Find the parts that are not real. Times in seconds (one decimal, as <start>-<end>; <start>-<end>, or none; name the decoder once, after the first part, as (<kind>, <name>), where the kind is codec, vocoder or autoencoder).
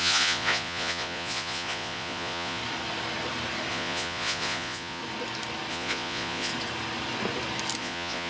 0.0-2.6 (vocoder, Vocos); 3.7-5.0; 5.7-6.5; 7.8-8.3